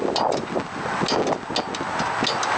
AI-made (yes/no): no